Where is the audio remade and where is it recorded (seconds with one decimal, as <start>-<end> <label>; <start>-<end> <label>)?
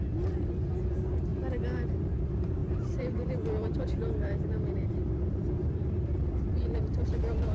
0.0-1.3 remade; 1.3-1.9 recorded; 1.9-7.5 remade